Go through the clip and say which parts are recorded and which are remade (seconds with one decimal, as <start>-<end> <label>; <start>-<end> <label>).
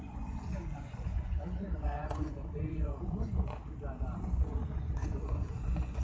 0.0-3.6 remade; 3.6-4.2 recorded; 4.2-6.0 remade